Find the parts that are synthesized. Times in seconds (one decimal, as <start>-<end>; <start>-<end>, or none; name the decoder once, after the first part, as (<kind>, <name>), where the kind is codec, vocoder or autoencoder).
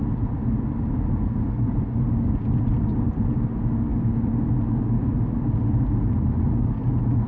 none